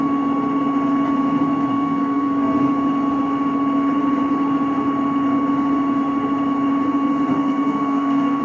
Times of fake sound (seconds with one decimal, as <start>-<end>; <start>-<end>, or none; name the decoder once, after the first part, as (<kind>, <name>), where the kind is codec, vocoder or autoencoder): 1.7-2.7 (codec, SNAC); 7.3-8.4